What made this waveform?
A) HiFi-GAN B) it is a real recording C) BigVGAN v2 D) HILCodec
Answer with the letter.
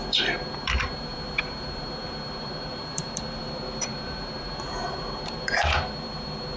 C